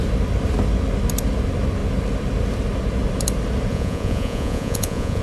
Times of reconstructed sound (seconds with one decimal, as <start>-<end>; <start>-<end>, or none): 3.7-5.2